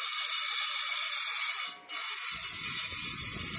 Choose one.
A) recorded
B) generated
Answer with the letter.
A